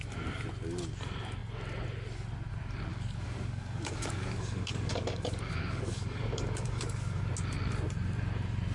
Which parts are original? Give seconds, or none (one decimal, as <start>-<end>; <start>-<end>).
0.0-2.9; 7.2-8.7